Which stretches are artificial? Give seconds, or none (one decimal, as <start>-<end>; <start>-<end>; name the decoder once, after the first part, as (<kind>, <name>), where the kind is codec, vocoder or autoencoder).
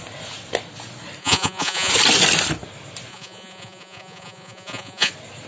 1.2-1.9 (vocoder, Vocos); 3.1-5.1